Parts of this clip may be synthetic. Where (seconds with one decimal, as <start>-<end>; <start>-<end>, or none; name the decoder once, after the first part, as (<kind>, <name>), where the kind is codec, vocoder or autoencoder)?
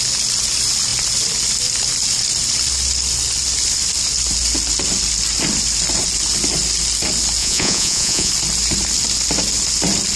7.4-8.3 (vocoder, Vocos)